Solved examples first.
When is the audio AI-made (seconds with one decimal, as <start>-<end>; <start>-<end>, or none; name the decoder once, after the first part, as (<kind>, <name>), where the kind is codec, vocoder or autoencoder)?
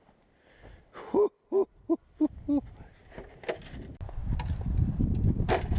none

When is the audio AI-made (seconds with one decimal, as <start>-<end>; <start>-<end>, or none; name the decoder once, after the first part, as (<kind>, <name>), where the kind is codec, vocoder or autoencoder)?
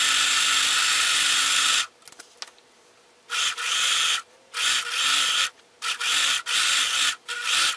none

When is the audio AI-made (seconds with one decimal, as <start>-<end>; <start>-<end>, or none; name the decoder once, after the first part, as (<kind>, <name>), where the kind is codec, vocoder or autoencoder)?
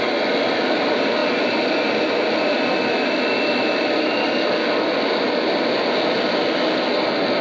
none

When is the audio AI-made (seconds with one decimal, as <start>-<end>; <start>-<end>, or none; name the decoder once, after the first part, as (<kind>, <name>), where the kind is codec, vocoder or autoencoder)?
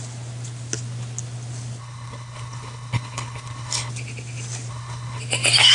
1.8-3.9 (codec, HILCodec); 4.7-5.2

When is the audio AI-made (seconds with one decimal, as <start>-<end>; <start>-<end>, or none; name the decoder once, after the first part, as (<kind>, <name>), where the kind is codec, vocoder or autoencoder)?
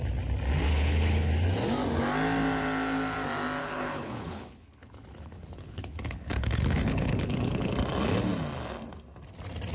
0.7-1.3 (codec, HILCodec); 3.6-7.7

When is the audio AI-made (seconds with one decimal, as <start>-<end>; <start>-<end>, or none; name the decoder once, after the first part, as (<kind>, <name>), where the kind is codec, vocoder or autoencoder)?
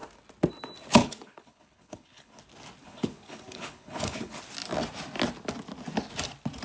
1.0-2.4 (codec, HILCodec); 2.8-4.4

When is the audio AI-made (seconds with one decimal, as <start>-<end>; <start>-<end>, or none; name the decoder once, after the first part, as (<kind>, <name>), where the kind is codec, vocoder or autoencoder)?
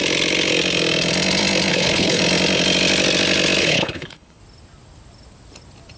1.7-2.2 (codec, HILCodec); 3.6-4.4